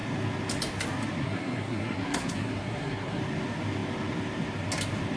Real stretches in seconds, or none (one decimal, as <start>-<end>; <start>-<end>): 0.0-1.2; 3.2-5.2